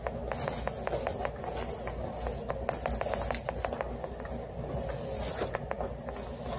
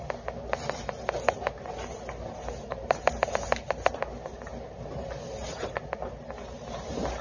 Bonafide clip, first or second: first